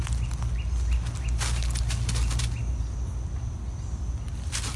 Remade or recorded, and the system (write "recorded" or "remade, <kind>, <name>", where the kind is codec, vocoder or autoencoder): recorded